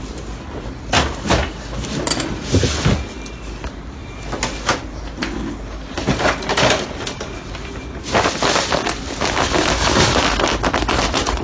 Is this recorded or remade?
recorded